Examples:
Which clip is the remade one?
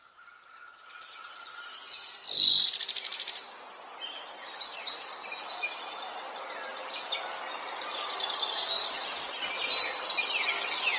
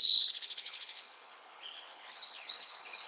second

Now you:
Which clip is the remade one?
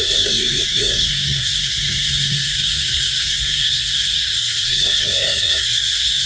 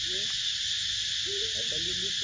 first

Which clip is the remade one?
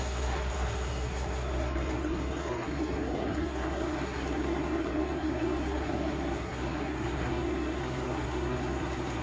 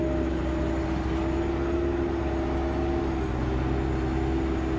first